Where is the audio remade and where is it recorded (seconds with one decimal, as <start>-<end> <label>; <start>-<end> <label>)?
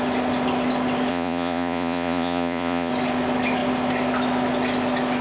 0.0-1.1 recorded; 1.1-2.9 remade; 2.9-5.2 recorded